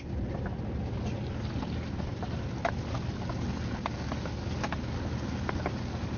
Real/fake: real